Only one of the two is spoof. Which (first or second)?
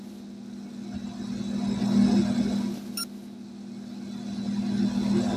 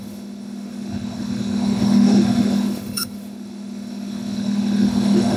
second